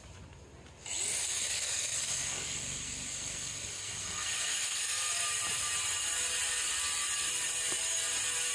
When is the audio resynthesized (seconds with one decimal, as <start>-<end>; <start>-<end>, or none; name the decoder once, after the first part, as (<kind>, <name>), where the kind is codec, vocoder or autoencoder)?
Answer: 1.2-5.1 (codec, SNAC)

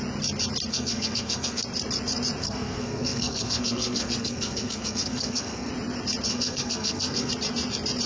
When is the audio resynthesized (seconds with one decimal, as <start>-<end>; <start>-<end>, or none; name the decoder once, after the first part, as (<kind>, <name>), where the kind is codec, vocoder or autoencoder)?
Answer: 0.7-1.6 (codec, SNAC); 2.4-5.7; 6.3-7.3

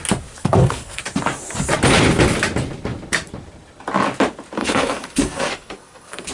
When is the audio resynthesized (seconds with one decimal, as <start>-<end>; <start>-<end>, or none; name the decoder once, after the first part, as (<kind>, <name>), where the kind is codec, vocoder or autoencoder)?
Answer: 0.4-1.0 (codec, SNAC); 4.6-6.3

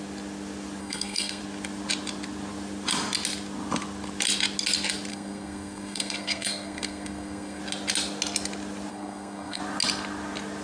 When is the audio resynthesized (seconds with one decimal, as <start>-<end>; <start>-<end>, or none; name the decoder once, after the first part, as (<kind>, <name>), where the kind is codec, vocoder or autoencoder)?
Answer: 0.8-1.4 (codec, SNAC); 5.1-7.6; 8.9-9.6

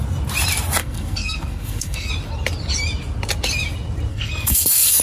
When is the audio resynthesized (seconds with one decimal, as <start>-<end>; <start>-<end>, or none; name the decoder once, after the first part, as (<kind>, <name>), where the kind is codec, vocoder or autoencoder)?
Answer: 0.8-2.1 (codec, SNAC); 4.1-5.0